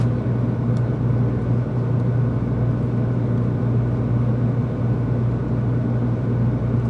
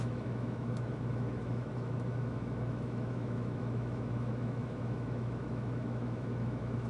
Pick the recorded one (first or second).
first